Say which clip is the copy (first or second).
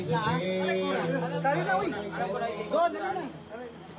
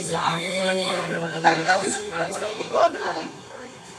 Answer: second